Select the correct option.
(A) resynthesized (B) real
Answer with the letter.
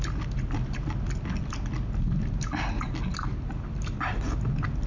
B